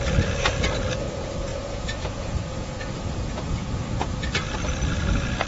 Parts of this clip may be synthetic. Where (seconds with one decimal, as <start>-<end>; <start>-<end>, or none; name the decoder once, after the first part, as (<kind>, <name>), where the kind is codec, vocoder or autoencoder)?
1.5-4.1 (vocoder, Vocos)